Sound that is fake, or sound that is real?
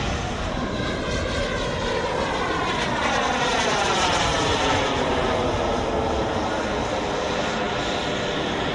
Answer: real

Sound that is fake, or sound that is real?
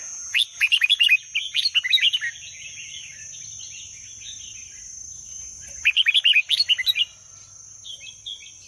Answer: real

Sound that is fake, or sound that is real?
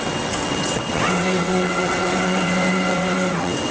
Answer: fake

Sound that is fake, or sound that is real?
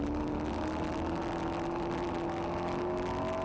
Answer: real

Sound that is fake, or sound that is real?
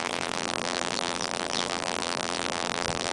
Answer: fake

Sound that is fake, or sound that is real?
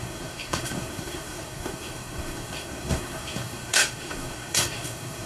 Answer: fake